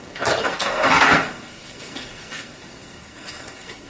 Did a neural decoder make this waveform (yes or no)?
yes